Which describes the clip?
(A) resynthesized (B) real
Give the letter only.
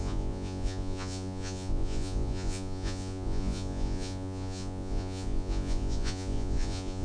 A